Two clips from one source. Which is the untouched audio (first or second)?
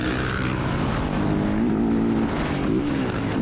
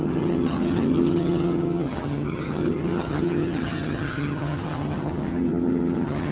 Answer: first